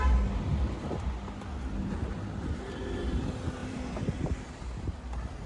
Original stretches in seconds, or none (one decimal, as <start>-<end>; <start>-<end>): 0.0-0.5; 3.0-3.6; 4.8-5.5